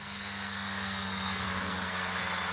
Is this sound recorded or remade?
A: remade